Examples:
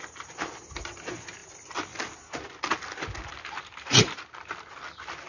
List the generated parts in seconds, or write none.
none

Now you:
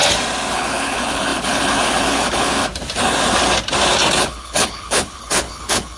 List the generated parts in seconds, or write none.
0.5-2.7 (codec, HILCodec); 4.2-6.0

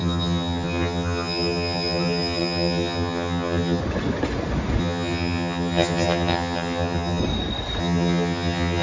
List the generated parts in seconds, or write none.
0.0-3.8 (vocoder, HiFi-GAN); 4.8-7.2; 7.8-8.8

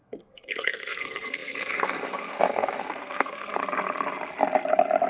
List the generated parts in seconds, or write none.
0.0-3.6 (codec, SNAC)

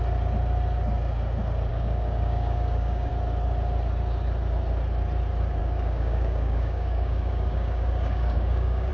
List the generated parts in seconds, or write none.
1.7-3.1 (codec, DAC); 5.6-8.9